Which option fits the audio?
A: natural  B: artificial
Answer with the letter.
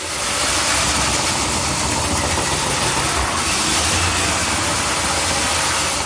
A